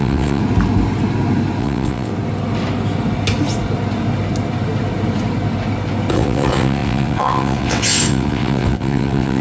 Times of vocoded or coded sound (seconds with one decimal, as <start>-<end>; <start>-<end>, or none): 0.0-0.4; 1.6-2.1; 6.1-9.4